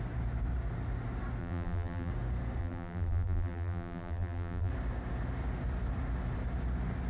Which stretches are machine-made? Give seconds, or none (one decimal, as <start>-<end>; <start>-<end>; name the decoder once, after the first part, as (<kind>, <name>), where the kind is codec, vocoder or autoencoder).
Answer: 1.4-2.1 (vocoder, BigVGAN v2); 2.6-4.7